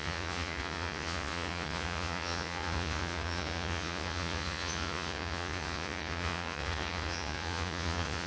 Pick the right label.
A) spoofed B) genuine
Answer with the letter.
A